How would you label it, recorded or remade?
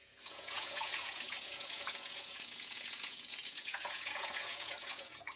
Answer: remade